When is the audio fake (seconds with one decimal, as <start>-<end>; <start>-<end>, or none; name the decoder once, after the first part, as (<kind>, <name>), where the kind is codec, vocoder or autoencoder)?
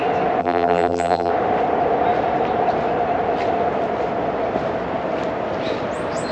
0.4-1.3 (vocoder, BigVGAN v2)